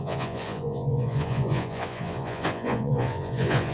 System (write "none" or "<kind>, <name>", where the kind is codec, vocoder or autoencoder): vocoder, Vocos